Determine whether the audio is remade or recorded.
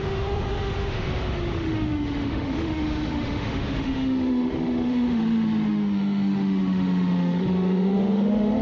remade